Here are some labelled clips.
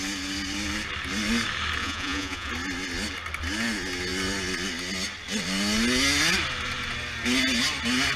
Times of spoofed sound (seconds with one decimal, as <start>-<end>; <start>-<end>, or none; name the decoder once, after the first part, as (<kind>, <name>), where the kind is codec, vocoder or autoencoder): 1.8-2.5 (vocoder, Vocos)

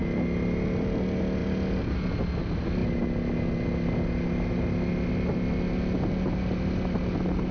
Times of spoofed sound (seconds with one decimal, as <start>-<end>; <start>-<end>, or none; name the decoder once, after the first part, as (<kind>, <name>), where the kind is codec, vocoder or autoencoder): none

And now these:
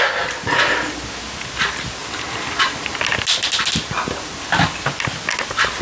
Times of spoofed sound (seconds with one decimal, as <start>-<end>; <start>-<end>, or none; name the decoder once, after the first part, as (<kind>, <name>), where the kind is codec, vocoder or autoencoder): none

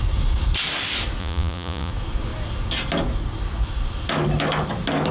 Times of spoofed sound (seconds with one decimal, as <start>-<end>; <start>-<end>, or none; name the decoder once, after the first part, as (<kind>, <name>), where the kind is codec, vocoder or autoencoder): 1.2-1.9 (vocoder, Vocos)

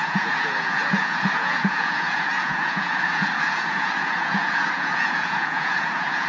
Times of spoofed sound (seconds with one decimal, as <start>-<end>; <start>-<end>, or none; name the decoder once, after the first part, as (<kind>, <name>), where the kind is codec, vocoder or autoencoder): 0.0-6.3 (vocoder, Vocos)